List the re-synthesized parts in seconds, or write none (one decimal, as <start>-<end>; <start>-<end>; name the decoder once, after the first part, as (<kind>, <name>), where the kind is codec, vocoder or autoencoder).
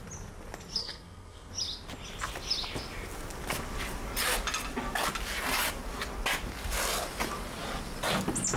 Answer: 0.8-1.5 (codec, SNAC)